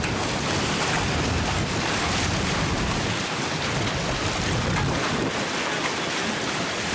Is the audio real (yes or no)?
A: yes